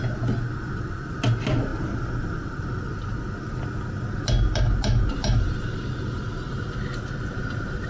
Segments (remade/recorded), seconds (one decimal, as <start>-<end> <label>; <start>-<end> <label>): 0.0-7.9 recorded